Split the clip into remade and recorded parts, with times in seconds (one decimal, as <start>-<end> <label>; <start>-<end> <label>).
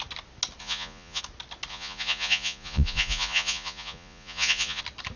0.0-0.6 recorded; 0.6-1.2 remade; 1.2-1.7 recorded; 1.7-4.8 remade; 4.8-5.2 recorded